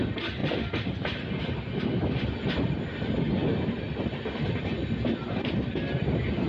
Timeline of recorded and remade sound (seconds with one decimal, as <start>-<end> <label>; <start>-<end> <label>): 0.0-6.5 recorded